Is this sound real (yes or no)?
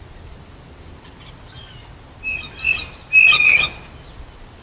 yes